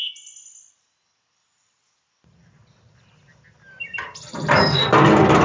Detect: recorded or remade recorded